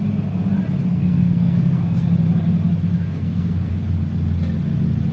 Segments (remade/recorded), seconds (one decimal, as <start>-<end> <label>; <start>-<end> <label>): 0.0-0.9 recorded; 0.9-2.1 remade; 2.1-2.9 recorded; 2.9-3.7 remade; 3.7-5.1 recorded